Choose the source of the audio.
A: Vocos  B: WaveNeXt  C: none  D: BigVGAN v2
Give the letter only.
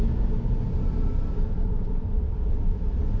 C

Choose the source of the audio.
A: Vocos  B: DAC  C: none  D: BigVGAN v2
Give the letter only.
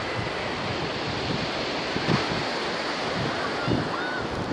C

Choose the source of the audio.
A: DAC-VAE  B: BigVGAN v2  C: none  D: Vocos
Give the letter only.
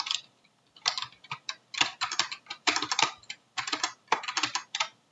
B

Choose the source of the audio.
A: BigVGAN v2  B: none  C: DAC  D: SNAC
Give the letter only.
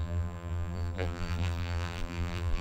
A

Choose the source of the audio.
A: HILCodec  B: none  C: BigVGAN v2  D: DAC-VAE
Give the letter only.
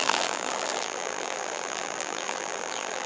C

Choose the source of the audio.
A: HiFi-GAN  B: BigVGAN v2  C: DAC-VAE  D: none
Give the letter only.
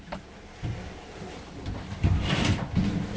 D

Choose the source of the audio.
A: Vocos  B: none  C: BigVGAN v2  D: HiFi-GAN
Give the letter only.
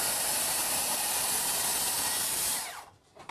C